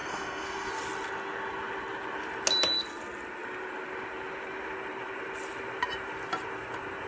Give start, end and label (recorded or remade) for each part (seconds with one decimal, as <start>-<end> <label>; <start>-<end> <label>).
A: 0.0-0.7 remade; 0.7-7.1 recorded